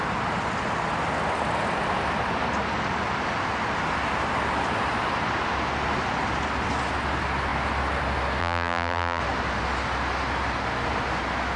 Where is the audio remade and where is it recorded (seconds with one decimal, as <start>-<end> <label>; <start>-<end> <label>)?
0.0-8.4 recorded; 8.4-9.2 remade; 9.2-11.6 recorded